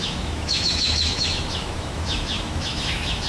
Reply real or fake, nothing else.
fake